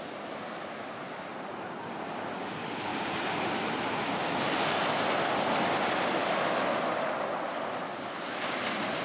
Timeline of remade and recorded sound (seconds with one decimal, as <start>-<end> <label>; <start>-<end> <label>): 0.0-9.0 recorded